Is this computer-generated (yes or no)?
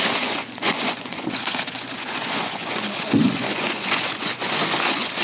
yes